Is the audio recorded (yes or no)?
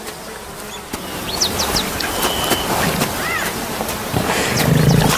yes